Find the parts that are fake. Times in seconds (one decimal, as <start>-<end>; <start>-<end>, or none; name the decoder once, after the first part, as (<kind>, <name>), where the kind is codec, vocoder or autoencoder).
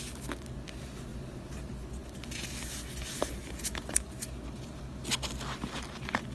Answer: 1.1-1.6 (vocoder, BigVGAN v2)